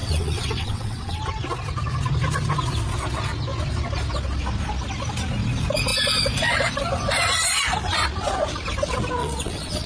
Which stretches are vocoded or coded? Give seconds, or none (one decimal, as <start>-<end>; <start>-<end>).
0.0-1.2; 9.2-9.9